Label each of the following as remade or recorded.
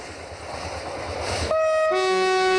recorded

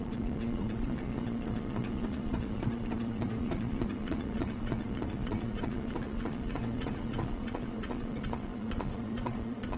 remade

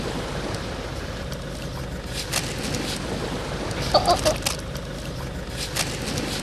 recorded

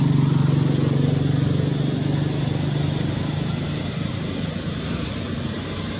recorded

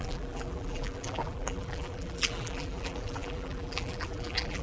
remade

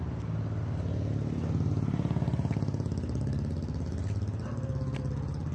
recorded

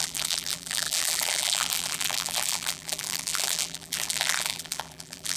remade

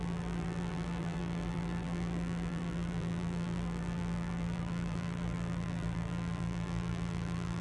remade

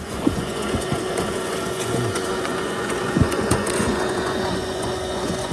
remade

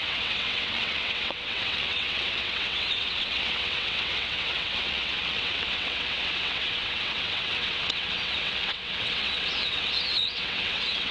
remade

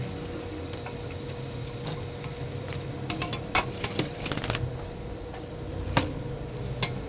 recorded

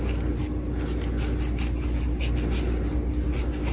recorded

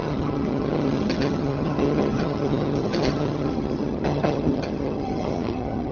remade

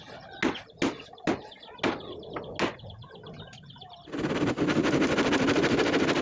recorded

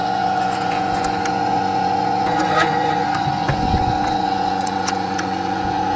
remade